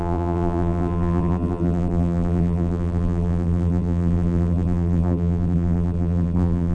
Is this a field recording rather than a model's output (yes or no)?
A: no